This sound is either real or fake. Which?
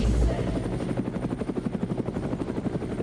real